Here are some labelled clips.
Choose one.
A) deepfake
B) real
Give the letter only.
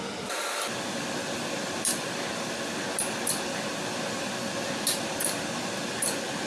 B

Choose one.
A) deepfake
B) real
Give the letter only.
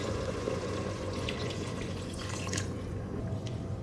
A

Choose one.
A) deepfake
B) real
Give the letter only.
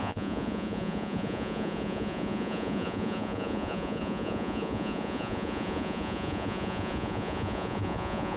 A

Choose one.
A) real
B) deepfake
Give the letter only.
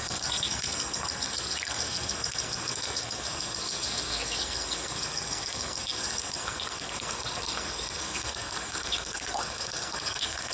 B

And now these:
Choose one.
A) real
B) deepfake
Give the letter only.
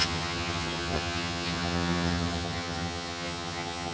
B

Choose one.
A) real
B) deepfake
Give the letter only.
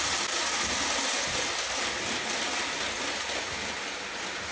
A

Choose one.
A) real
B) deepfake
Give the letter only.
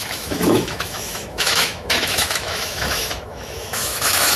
B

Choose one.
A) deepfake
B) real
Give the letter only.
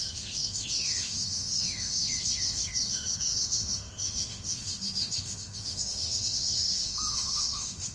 A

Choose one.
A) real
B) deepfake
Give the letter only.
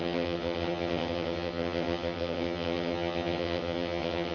B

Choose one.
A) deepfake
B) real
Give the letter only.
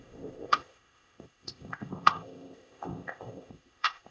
A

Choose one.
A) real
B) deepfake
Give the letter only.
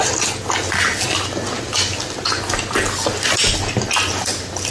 A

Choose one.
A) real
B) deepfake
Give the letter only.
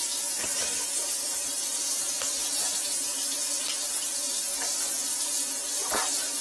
A